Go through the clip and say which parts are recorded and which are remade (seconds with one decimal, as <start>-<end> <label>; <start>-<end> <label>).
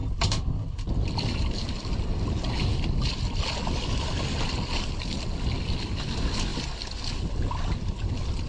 0.0-8.5 recorded